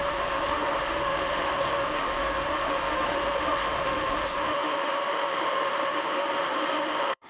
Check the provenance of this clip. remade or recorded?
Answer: remade